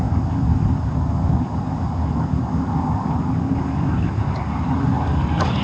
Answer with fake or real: fake